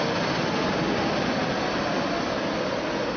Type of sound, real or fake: real